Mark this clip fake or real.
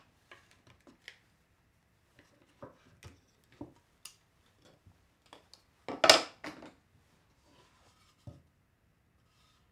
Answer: real